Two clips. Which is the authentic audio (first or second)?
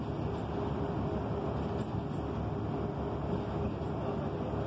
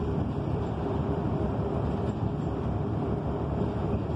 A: first